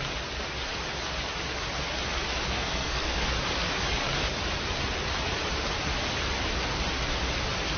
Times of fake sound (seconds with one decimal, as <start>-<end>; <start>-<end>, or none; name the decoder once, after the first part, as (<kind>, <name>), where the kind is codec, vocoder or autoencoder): 2.5-3.3 (codec, SNAC)